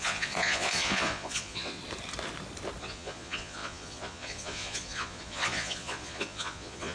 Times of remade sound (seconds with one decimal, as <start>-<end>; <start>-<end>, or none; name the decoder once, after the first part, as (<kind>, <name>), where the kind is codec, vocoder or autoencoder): 0.0-1.8 (vocoder, Vocos); 2.8-6.9